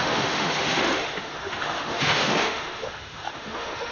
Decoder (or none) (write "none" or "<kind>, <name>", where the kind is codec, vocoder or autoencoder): autoencoder, DAC-VAE